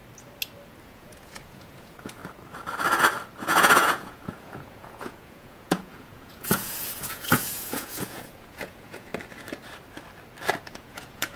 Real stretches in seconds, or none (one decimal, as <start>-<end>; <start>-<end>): 0.0-0.8; 2.2-3.4; 9.1-10.6